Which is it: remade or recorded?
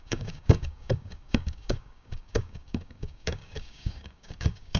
remade